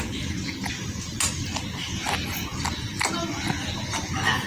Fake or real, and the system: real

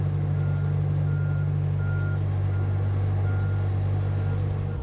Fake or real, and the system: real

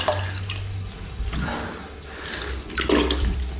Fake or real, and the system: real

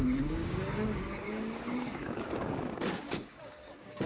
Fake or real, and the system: fake, codec, DAC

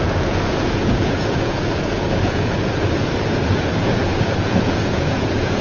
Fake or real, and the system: fake, vocoder, Vocos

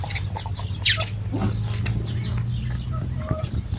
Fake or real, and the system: real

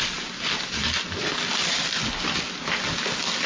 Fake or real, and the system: real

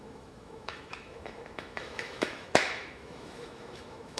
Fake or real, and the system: fake, autoencoder, DAC-VAE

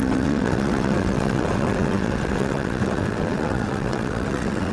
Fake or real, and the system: fake, vocoder, WaveNeXt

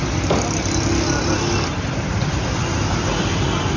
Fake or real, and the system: real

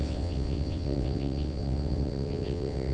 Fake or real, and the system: fake, vocoder, WaveNeXt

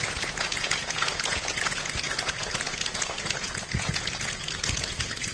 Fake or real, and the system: fake, vocoder, Vocos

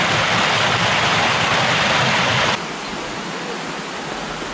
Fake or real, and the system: real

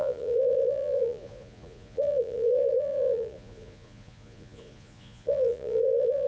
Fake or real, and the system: fake, vocoder, Vocos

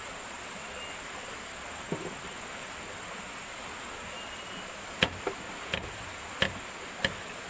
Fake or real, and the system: real